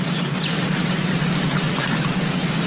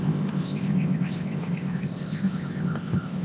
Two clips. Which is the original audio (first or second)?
first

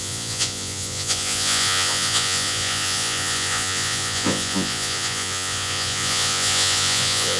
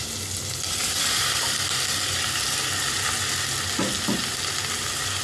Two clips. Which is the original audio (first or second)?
second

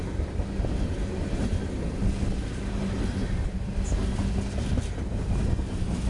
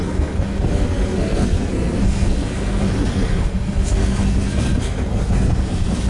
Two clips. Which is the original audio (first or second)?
first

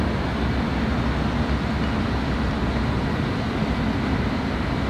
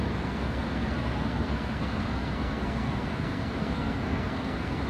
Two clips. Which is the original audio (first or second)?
first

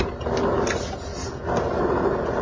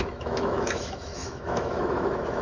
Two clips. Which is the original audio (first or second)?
first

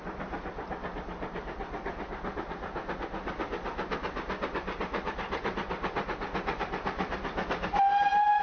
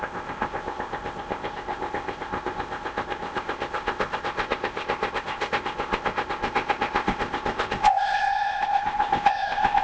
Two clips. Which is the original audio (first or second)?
first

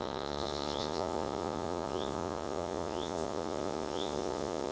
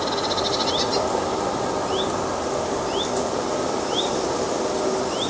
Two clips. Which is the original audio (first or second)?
second